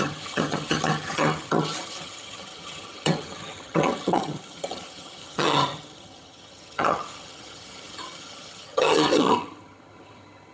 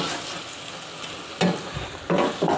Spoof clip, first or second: first